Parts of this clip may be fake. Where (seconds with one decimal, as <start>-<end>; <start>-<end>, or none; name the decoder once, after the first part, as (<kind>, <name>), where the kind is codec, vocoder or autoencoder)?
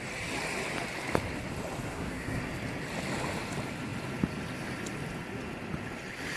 1.9-2.4 (codec, SNAC)